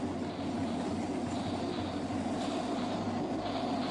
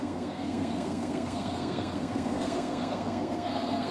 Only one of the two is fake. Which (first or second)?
second